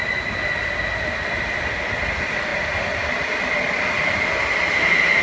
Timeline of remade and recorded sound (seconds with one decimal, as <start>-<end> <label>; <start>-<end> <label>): 0.0-5.2 recorded